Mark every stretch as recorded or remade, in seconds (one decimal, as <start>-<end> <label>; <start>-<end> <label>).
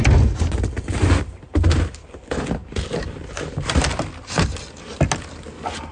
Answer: 0.0-5.9 recorded